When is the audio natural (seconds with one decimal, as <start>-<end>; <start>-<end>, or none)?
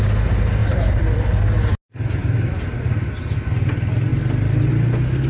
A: 0.0-0.6; 1.4-4.1; 4.7-5.3